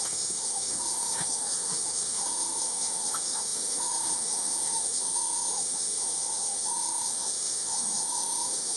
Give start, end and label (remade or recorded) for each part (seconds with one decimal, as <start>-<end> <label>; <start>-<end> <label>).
0.0-8.8 remade